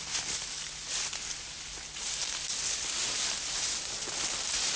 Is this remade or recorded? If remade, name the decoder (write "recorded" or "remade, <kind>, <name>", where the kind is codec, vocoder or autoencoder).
recorded